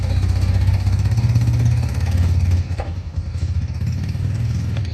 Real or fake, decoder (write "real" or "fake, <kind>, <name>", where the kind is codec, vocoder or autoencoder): fake, codec, DAC